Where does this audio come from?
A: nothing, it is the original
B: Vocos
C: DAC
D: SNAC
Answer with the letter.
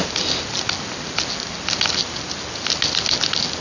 A